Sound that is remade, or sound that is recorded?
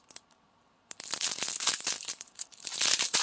recorded